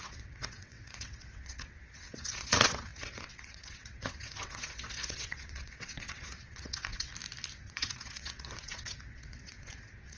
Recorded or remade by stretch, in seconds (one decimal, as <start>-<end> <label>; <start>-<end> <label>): 0.0-7.1 remade; 7.1-7.6 recorded; 7.6-10.2 remade